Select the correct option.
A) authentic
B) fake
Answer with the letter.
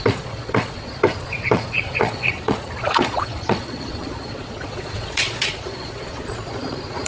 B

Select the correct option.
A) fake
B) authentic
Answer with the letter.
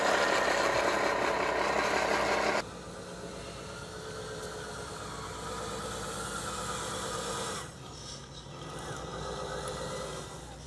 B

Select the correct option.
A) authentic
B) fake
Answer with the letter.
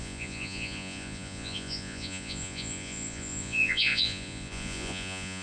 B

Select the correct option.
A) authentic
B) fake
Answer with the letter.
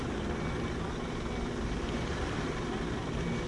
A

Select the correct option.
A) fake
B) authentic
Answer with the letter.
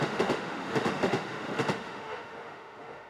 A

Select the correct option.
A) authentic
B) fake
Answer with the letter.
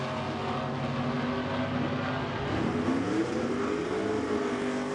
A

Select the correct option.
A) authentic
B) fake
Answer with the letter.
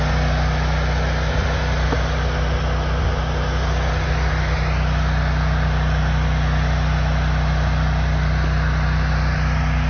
A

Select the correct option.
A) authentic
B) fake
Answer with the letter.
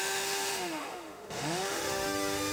B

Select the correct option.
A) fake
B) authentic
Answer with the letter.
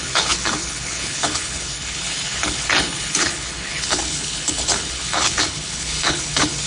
A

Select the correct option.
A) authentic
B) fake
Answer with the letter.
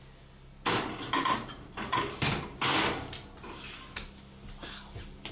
A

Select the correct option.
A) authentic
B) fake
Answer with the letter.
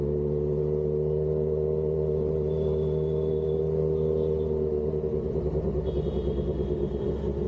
A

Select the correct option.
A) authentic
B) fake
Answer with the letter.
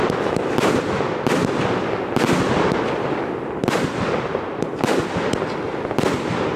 A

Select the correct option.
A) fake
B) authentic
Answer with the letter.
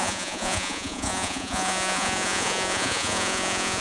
A